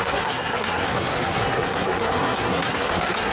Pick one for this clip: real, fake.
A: fake